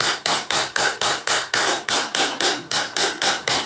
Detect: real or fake fake